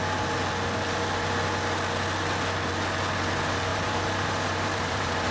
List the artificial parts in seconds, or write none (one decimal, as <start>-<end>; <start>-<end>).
3.7-5.3